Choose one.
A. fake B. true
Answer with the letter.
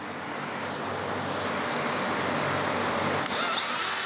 B